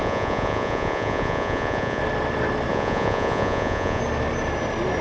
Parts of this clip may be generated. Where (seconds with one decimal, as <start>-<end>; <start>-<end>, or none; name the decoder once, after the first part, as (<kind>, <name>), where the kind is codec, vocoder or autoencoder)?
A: 0.0-2.0 (vocoder, Vocos); 2.7-4.0